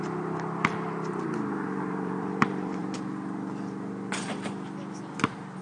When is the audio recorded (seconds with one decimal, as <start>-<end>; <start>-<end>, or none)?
none